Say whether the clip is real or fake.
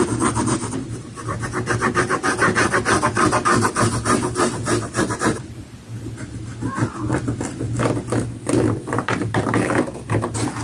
real